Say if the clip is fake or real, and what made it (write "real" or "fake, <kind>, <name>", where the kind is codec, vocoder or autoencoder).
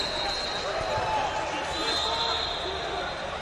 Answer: real